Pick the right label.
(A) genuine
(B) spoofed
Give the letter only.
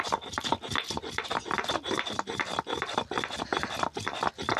A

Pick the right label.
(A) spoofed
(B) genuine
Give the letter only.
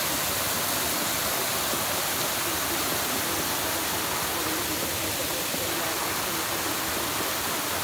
B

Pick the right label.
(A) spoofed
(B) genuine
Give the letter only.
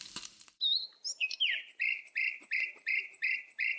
A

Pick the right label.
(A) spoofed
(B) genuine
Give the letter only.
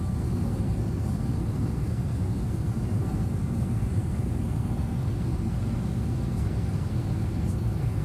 A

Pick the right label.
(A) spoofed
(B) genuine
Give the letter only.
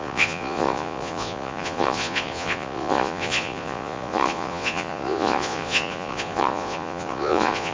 A